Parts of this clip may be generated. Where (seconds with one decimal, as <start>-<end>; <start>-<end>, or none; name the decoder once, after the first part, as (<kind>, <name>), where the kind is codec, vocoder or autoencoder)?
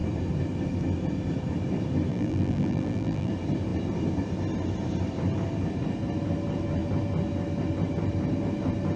2.1-3.3 (vocoder, BigVGAN v2)